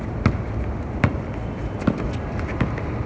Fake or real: fake